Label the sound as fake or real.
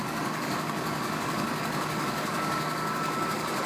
fake